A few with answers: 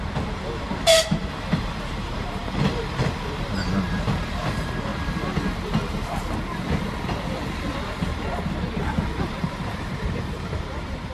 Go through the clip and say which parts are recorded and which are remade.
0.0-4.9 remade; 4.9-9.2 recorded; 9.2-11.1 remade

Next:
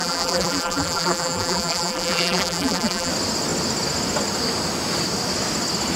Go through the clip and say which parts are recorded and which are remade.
0.0-3.1 remade; 3.1-6.0 recorded

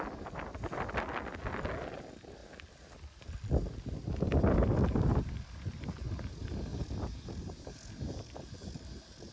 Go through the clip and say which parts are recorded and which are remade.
0.0-2.4 recorded; 2.4-5.5 remade; 5.5-6.7 recorded; 6.7-9.3 remade

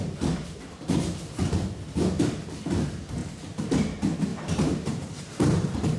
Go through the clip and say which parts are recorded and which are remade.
0.0-4.3 recorded; 4.3-6.0 remade

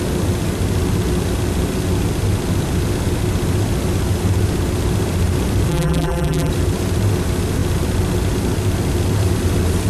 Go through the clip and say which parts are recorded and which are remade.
0.0-5.7 recorded; 5.7-6.5 remade; 6.5-9.9 recorded

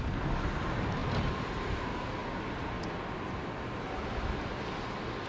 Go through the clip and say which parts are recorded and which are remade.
0.0-1.0 recorded; 1.0-1.7 remade; 1.7-5.3 recorded